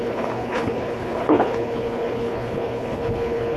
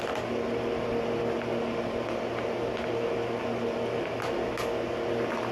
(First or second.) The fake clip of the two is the first